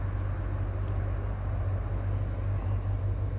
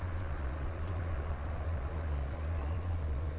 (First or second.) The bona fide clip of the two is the first